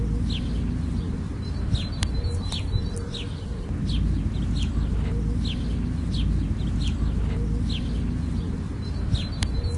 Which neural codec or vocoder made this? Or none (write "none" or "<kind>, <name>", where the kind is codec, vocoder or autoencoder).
none